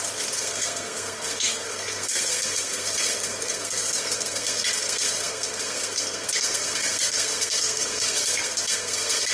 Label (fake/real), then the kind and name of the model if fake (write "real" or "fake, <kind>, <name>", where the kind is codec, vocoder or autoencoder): fake, codec, SNAC